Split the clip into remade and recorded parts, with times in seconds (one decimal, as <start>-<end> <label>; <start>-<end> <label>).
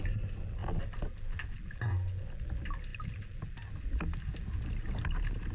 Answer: 0.0-5.5 recorded